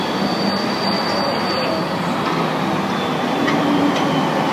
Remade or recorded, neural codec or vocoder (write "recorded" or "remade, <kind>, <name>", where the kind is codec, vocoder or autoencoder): recorded